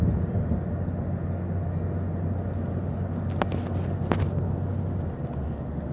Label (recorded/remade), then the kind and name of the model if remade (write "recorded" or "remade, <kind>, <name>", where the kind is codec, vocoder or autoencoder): recorded